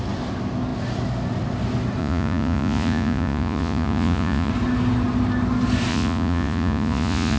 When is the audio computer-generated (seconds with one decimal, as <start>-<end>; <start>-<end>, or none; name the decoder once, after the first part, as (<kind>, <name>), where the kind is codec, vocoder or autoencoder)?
2.0-4.5 (vocoder, Vocos); 5.9-7.4